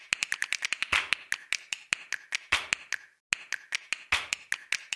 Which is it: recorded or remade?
recorded